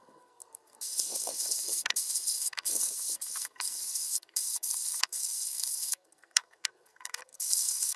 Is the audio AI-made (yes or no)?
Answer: yes